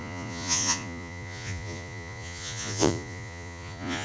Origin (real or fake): fake